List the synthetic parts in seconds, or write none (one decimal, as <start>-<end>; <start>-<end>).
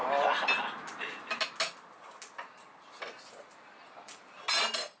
none